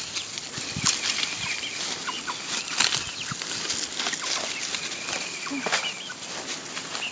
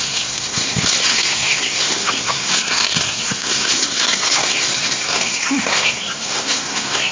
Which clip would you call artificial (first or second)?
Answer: second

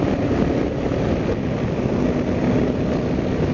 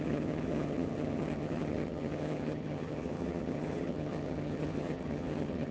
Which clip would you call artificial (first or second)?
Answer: second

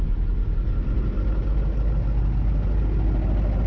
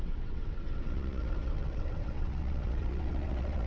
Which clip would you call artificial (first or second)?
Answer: second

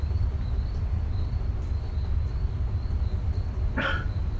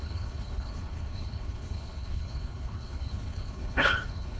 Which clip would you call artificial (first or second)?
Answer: second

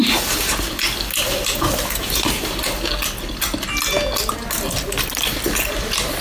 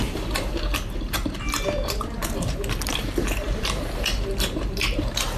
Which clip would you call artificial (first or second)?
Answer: second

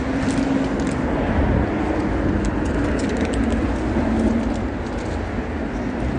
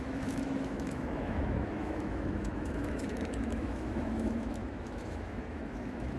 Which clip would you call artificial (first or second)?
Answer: second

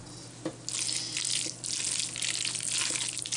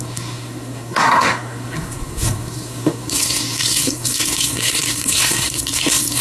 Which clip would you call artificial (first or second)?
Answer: second